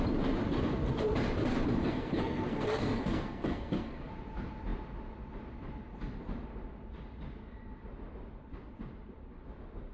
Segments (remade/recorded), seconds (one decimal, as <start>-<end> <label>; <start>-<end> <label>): 0.0-1.8 recorded; 1.8-4.1 remade; 4.1-9.9 recorded